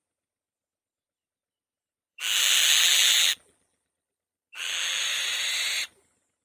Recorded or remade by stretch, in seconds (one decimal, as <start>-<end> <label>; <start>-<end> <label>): 0.0-2.1 recorded; 2.1-5.0 remade; 5.0-6.4 recorded